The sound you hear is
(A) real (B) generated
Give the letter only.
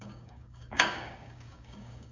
B